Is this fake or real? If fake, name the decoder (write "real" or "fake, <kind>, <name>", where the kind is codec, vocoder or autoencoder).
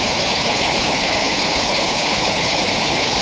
fake, codec, HILCodec